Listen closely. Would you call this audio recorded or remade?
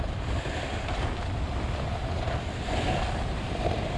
recorded